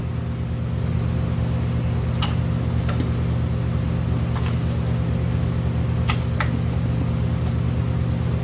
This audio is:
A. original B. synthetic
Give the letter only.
A